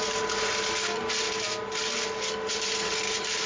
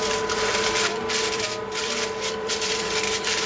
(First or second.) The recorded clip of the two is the first